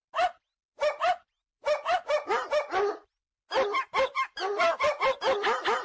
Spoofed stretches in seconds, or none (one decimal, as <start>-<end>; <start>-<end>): none